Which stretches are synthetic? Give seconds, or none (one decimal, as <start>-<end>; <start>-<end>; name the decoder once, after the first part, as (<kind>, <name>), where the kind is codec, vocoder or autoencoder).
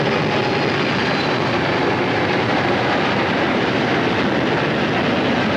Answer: 1.0-4.1 (vocoder, BigVGAN v2)